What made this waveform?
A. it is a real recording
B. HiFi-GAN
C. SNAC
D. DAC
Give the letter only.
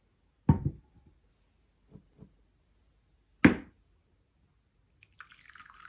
A